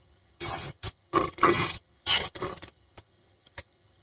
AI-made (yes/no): yes